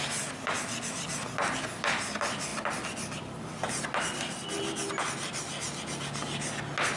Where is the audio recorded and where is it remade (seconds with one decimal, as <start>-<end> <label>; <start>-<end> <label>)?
0.0-7.0 recorded